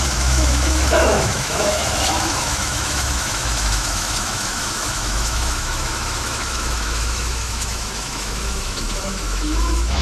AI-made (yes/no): yes